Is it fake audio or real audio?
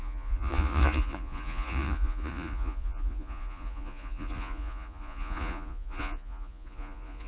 fake